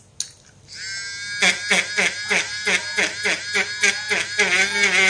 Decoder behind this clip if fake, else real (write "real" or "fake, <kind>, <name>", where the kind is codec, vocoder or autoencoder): real